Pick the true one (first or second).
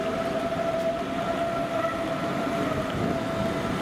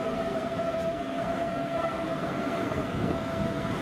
first